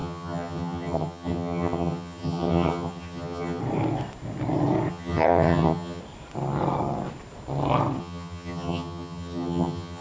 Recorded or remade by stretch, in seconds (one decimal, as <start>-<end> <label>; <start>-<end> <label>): 0.0-3.6 remade; 3.6-4.9 recorded; 4.9-6.0 remade; 6.0-8.0 recorded; 8.0-10.0 remade